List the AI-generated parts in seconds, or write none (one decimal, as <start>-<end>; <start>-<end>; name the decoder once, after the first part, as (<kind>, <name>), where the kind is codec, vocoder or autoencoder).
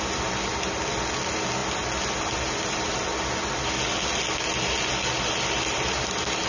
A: none